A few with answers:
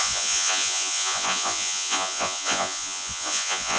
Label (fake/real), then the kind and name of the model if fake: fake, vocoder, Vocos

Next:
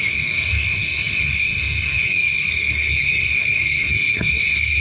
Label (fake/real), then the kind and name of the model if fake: fake, codec, SNAC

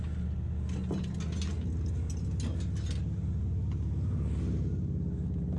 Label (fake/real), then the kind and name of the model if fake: real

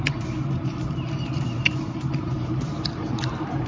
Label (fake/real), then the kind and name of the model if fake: fake, vocoder, BigVGAN v2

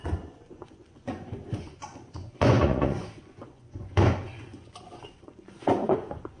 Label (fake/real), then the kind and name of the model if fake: fake, vocoder, Vocos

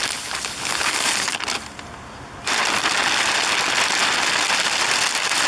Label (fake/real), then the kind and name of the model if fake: real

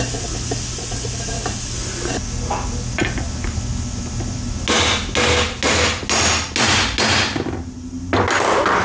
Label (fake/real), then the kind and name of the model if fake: real